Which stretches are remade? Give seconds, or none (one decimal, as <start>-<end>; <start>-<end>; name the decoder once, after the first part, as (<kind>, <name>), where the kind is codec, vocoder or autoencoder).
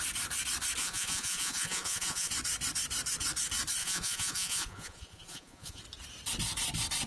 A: 0.8-2.3 (vocoder, Vocos); 3.8-5.8